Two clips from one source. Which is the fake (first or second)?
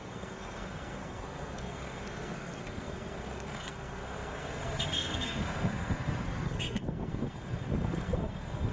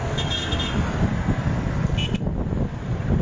first